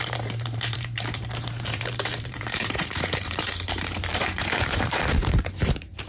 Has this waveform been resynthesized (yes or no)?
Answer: yes